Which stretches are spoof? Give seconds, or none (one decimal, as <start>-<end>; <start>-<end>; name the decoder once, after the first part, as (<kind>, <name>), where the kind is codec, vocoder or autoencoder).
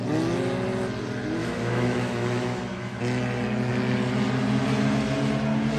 1.4-3.0 (autoencoder, DAC-VAE)